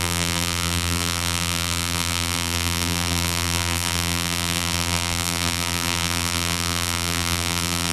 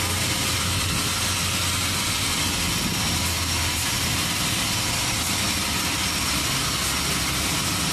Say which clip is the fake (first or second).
first